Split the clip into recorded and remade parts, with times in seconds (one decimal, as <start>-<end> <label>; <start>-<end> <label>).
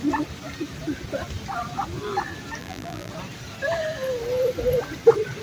0.0-2.6 recorded; 2.6-3.1 remade; 3.1-5.4 recorded